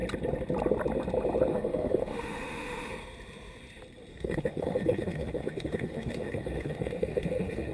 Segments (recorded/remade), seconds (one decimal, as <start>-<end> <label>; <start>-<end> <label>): 0.0-1.5 recorded; 1.5-2.9 remade; 2.9-4.1 recorded; 4.1-7.7 remade